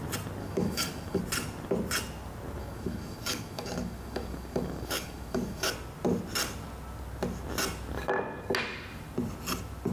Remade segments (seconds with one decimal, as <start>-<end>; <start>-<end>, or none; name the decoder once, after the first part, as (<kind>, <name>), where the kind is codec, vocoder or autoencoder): 0.4-1.2 (codec, DAC); 2.6-5.7